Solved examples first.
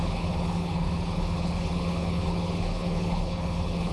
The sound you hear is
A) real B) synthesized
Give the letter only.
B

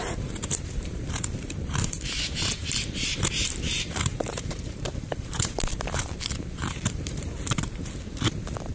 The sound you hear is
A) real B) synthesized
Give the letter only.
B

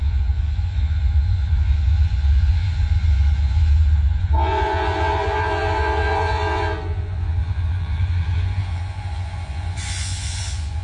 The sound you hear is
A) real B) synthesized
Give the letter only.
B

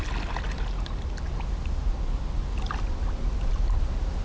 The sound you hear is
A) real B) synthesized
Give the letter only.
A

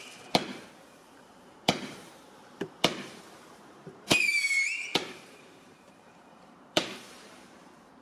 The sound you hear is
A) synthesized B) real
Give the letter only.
A